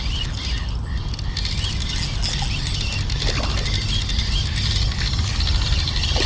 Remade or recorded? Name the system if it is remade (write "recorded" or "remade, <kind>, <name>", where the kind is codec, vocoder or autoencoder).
recorded